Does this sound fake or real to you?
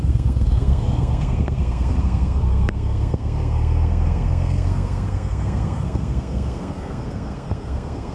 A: fake